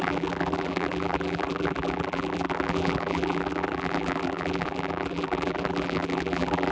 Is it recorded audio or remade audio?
remade